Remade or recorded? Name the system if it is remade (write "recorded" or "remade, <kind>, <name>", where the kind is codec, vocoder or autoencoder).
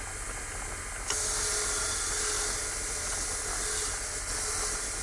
recorded